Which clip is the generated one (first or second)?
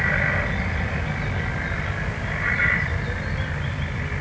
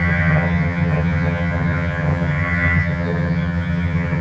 second